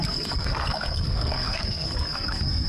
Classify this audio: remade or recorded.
remade